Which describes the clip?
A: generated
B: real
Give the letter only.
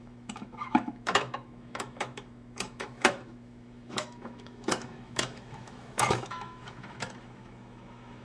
A